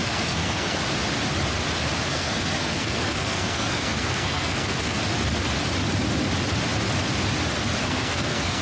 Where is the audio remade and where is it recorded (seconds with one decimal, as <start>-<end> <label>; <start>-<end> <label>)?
0.0-0.8 remade; 0.8-2.1 recorded; 2.1-5.0 remade; 5.0-7.8 recorded; 7.8-8.6 remade